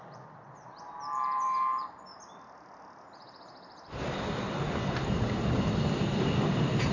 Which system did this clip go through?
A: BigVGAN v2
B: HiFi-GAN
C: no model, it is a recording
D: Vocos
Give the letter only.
C